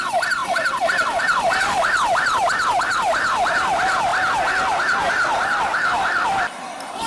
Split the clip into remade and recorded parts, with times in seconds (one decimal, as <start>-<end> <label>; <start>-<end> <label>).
0.0-7.1 recorded